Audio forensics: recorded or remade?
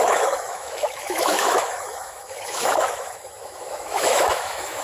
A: remade